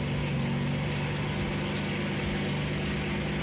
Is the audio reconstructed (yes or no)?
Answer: no